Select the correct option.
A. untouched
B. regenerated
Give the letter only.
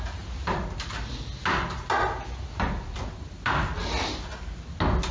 A